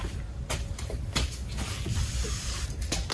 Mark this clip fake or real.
real